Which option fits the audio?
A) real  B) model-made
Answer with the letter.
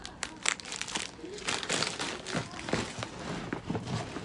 A